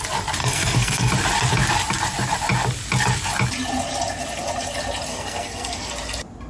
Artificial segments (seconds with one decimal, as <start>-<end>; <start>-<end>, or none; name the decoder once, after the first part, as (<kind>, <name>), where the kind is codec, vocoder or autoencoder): 0.4-1.1 (codec, SNAC); 5.1-5.9